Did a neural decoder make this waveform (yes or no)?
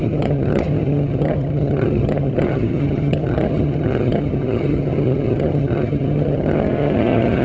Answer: yes